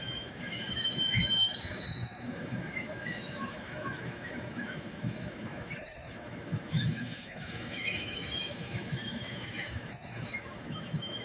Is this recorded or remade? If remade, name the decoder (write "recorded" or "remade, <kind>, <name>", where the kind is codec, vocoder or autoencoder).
remade, autoencoder, DAC-VAE